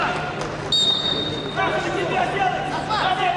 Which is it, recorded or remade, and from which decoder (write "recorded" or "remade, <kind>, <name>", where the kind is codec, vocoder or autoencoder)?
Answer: recorded